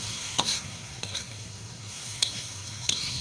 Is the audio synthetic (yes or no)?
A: yes